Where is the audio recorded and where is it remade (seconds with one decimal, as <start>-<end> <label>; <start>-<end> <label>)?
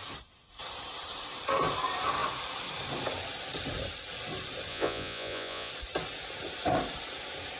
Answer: 0.0-4.7 recorded; 4.7-5.7 remade; 5.7-7.6 recorded